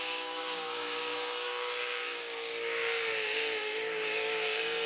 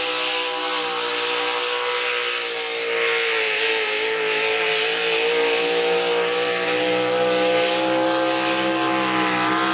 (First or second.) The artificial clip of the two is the first